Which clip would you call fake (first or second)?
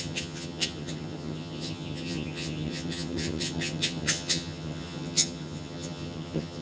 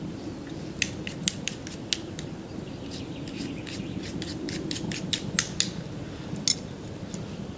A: first